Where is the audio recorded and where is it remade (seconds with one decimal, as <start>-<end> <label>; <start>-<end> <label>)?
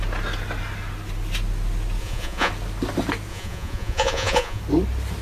0.0-2.0 recorded; 2.0-2.5 remade; 2.5-3.3 recorded; 3.3-4.6 remade; 4.6-5.2 recorded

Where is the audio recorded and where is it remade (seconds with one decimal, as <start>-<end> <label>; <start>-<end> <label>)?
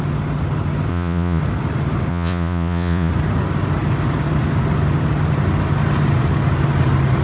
0.0-0.9 recorded; 0.9-1.4 remade; 1.4-2.1 recorded; 2.1-3.1 remade; 3.1-7.2 recorded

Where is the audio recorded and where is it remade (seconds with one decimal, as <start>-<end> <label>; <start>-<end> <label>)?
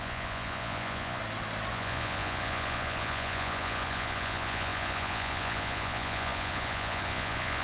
0.0-1.2 remade; 1.2-1.7 recorded; 1.7-7.6 remade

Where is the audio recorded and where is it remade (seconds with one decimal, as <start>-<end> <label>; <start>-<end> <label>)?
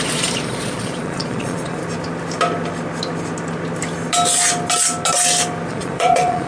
0.0-1.8 remade; 1.8-5.7 recorded; 5.7-6.5 remade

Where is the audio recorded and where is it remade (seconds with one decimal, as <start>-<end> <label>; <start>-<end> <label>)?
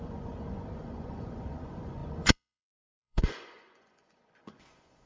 0.0-5.1 remade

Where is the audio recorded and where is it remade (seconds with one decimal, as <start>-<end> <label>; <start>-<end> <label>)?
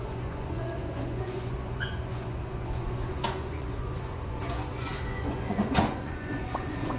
0.0-7.0 remade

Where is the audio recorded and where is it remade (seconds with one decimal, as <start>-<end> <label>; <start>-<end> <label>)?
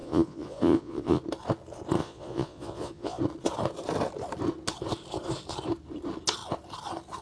0.0-1.2 remade; 1.2-2.0 recorded; 2.0-3.2 remade; 3.2-7.2 recorded